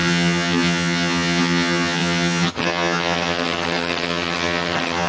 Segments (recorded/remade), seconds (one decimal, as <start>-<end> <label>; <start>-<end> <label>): 0.0-5.1 remade